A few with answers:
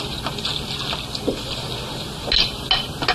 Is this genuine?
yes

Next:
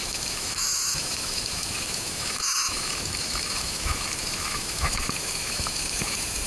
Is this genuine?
no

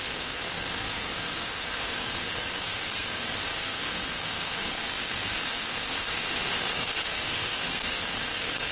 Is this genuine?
no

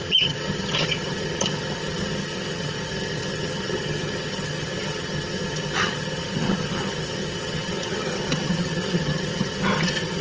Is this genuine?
no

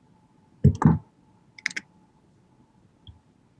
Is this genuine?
yes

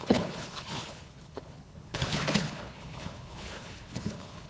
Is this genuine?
no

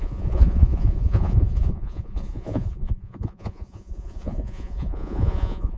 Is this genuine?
no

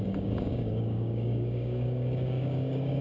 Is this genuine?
no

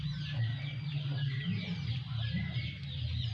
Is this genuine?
yes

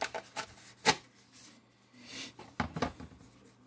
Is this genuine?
yes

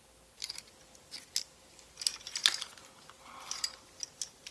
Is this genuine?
yes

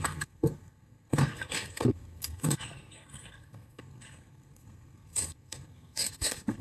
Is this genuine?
no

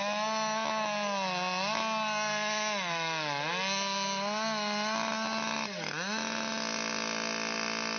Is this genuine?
yes